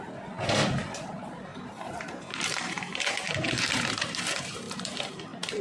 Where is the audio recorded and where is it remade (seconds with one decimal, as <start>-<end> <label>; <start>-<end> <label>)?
0.0-1.5 recorded; 1.5-4.9 remade; 4.9-5.6 recorded